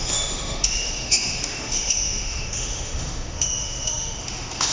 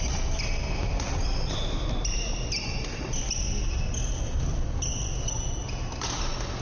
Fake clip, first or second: first